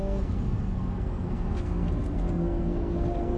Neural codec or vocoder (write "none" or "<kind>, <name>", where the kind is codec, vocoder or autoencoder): codec, SNAC